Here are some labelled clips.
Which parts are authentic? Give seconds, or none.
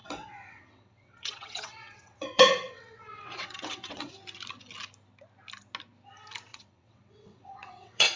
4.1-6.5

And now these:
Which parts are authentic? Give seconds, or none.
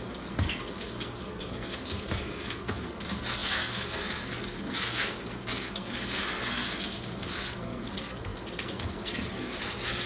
none